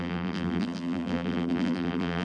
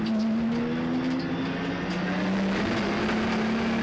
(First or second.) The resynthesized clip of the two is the first